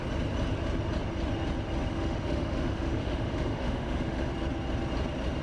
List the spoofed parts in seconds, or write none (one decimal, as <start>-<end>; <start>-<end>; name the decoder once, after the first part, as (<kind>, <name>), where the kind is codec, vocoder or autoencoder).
1.9-4.3 (autoencoder, DAC-VAE)